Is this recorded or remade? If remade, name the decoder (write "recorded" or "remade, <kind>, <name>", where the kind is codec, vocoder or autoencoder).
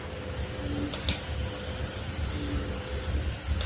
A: recorded